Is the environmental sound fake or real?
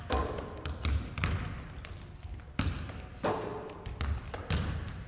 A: real